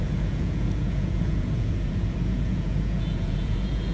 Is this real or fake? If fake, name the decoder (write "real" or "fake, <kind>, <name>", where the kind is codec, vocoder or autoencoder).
fake, vocoder, Vocos